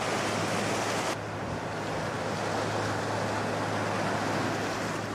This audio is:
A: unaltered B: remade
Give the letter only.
A